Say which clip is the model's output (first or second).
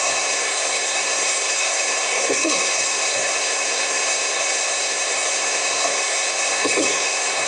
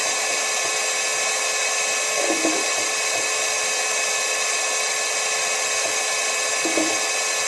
first